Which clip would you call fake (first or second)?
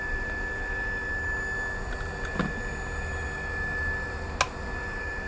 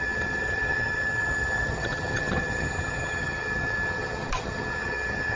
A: second